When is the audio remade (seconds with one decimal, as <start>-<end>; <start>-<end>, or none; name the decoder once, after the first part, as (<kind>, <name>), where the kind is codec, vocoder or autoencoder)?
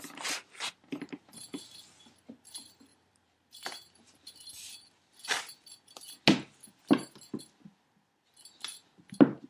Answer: 2.9-4.3 (vocoder, BigVGAN v2)